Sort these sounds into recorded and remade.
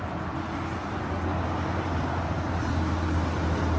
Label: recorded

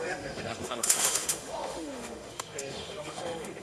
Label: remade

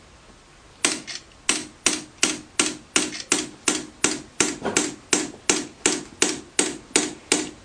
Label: recorded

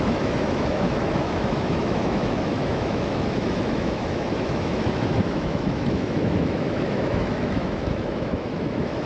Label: remade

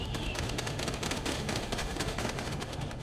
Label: remade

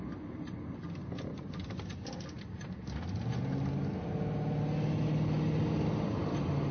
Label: recorded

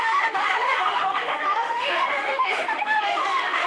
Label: remade